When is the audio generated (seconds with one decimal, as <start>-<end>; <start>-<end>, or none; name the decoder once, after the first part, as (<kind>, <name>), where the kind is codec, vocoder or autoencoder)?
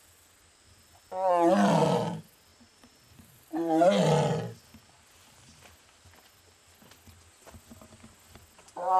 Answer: 2.5-4.0 (vocoder, BigVGAN v2)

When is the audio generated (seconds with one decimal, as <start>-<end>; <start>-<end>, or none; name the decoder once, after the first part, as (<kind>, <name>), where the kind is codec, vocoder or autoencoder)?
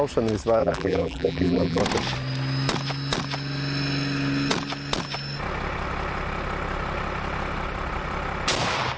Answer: 0.6-1.8 (vocoder, BigVGAN v2)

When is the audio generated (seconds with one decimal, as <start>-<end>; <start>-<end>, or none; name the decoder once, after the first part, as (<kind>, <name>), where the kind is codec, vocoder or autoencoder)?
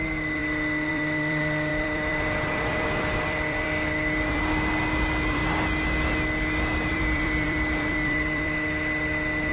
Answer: 0.0-5.4 (vocoder, BigVGAN v2); 6.9-9.5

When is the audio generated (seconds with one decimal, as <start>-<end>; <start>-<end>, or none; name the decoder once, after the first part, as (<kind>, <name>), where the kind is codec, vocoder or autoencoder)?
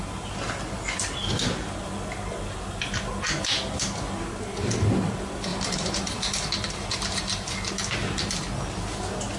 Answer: 5.5-6.1 (vocoder, BigVGAN v2)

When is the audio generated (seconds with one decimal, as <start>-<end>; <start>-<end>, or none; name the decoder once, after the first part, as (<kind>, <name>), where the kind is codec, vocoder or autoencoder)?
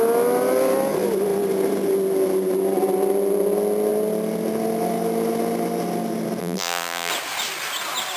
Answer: 6.4-7.1 (vocoder, BigVGAN v2)